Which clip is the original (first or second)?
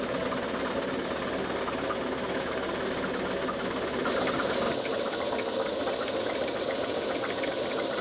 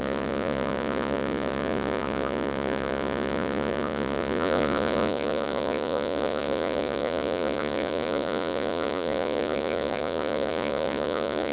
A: first